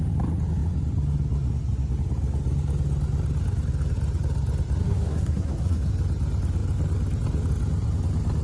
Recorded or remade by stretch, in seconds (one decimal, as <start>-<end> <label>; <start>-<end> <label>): 0.0-4.8 recorded; 4.8-5.9 remade; 5.9-8.4 recorded